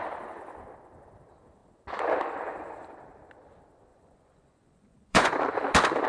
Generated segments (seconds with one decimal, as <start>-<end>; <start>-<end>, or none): 3.9-5.3